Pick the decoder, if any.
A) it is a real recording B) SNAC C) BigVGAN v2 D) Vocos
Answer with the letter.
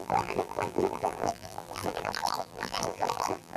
C